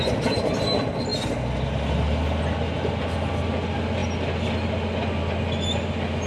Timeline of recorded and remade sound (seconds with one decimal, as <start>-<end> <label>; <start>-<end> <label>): 0.0-6.3 recorded